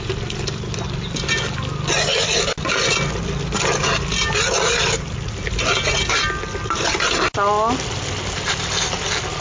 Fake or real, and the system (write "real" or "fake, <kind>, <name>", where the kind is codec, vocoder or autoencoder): real